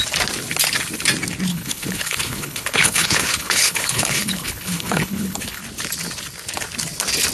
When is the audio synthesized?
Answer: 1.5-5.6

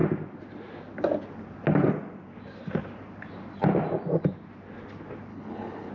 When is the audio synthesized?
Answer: 5.3-5.9

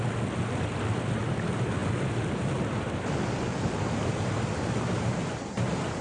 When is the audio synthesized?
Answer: none

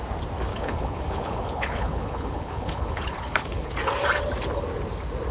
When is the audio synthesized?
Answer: 0.5-3.7

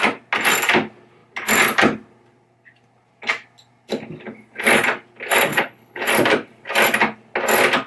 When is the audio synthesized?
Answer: 5.5-6.1

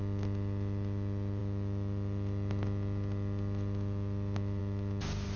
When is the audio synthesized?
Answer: none

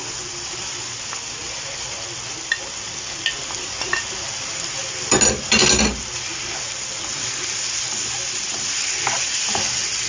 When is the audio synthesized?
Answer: none

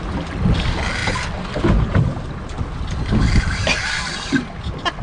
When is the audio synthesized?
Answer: none